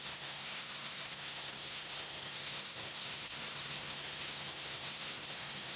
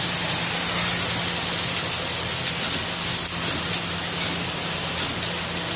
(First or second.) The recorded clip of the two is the second